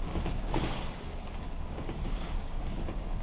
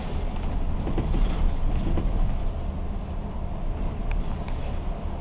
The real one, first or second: second